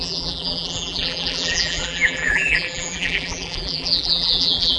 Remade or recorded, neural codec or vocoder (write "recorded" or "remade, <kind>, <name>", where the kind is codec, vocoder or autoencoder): remade, vocoder, BigVGAN v2